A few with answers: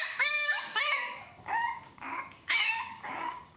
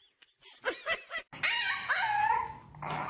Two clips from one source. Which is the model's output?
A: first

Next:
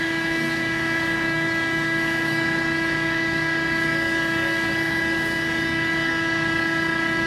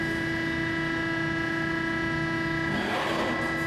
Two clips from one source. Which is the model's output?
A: first